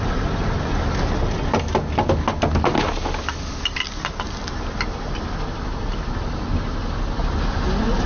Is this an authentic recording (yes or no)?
yes